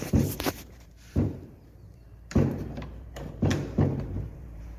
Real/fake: fake